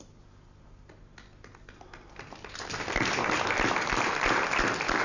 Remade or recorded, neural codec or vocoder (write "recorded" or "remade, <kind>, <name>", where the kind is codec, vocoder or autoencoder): recorded